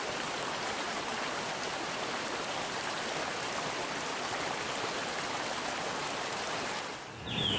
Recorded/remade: recorded